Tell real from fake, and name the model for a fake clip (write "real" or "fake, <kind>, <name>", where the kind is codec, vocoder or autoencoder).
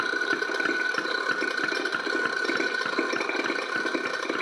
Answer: real